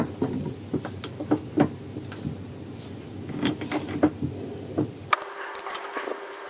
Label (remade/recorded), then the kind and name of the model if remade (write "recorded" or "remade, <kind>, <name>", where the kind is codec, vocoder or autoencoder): recorded